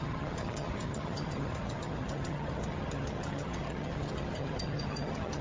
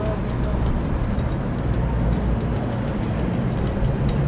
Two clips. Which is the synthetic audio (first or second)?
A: first